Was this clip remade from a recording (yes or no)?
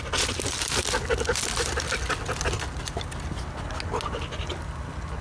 no